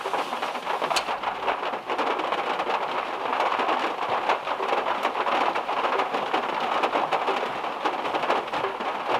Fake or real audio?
real